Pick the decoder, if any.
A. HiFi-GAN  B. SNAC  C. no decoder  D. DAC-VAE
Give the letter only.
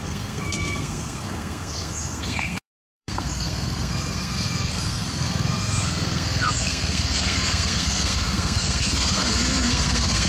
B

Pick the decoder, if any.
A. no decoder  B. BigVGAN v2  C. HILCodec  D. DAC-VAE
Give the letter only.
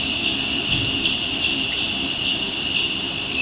B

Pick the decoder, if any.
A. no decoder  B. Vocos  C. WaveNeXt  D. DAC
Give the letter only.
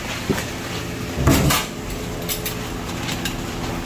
A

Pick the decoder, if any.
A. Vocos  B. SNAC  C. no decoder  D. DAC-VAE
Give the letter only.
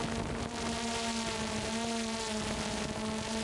C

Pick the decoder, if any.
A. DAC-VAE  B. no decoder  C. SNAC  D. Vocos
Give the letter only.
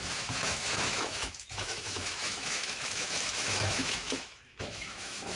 A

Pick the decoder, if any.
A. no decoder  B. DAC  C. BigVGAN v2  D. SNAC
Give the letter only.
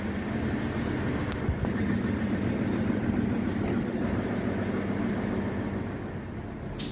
A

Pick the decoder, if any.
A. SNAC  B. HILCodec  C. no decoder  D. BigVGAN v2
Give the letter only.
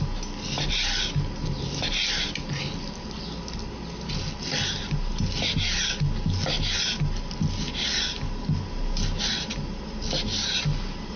C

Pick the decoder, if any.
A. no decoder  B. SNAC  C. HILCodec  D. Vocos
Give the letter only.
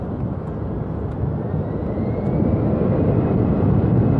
A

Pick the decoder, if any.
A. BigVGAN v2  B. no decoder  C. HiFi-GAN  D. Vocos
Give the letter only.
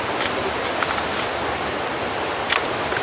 B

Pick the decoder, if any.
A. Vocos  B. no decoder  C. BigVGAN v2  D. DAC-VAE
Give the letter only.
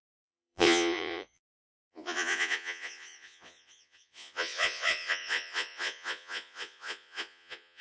A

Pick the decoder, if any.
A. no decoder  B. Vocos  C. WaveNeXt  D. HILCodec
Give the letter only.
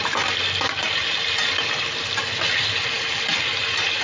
A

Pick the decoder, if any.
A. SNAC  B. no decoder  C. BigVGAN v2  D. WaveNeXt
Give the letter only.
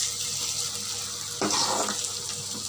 B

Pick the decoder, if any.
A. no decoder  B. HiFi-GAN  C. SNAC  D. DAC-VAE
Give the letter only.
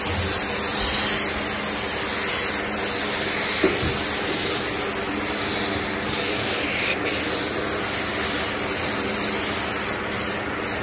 A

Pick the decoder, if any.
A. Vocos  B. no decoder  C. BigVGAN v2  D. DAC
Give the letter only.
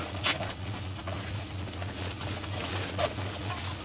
A